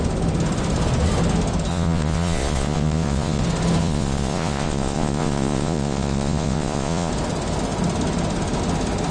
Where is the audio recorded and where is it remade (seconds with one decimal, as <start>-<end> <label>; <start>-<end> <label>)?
0.0-1.7 recorded; 1.7-3.4 remade; 3.4-3.8 recorded; 3.8-7.1 remade; 7.1-9.1 recorded